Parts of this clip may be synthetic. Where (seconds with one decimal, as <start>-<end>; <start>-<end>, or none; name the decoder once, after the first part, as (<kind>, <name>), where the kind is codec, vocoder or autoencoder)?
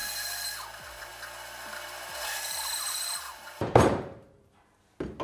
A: 3.3-4.7 (vocoder, BigVGAN v2)